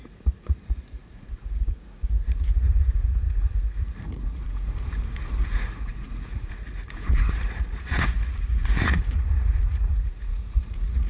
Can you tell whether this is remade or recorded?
remade